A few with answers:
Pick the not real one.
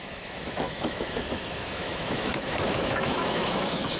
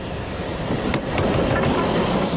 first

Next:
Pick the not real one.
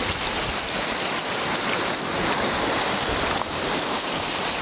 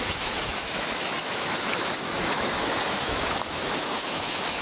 second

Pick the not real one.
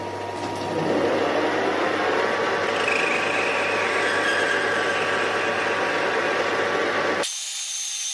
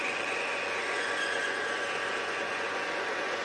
second